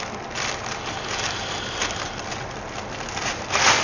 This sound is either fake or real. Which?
real